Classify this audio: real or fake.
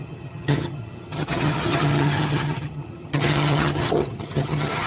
fake